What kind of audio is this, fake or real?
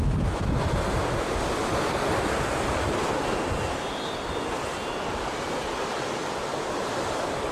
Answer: real